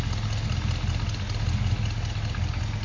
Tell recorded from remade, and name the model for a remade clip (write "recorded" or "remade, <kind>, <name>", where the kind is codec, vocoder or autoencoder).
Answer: recorded